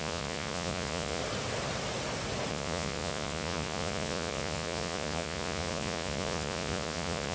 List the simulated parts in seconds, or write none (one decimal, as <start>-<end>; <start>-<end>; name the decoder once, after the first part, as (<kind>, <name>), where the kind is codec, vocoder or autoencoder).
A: 0.0-1.2 (vocoder, Vocos); 2.5-7.3